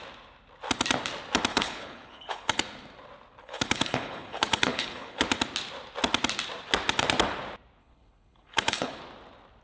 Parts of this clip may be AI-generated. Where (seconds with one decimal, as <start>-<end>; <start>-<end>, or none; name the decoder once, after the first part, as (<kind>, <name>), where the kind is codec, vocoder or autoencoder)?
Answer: 1.5-2.6 (codec, HILCodec); 3.4-5.2; 7.8-9.0